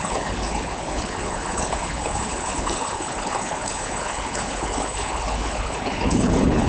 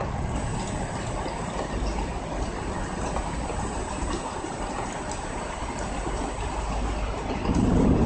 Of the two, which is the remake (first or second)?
first